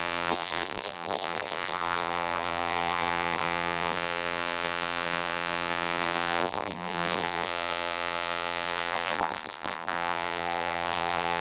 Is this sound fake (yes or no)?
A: yes